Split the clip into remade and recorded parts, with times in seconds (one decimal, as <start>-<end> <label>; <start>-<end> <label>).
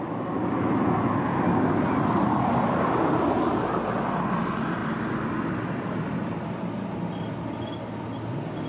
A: 0.0-8.7 recorded